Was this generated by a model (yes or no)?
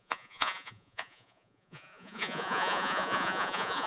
yes